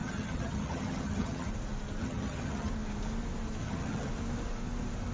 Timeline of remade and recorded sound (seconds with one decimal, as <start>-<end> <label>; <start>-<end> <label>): 0.0-1.5 remade; 1.5-2.0 recorded; 2.0-2.7 remade; 2.7-3.6 recorded; 3.6-4.1 remade; 4.1-5.1 recorded